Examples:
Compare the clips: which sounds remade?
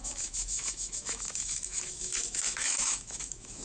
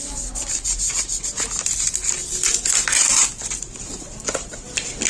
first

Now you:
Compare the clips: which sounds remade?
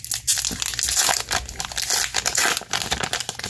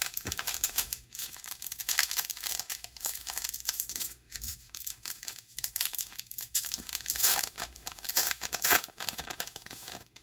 second